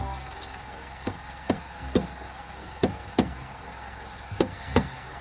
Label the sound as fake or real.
fake